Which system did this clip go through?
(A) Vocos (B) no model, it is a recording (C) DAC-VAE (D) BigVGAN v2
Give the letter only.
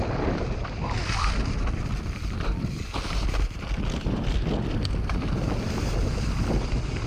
B